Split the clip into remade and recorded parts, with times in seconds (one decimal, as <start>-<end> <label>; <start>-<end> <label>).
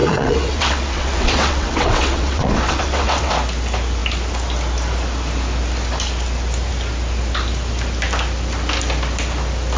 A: 0.0-3.3 remade; 3.3-9.8 recorded